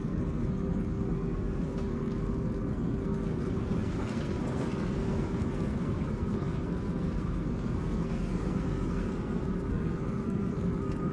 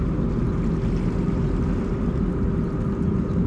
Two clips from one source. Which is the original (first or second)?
second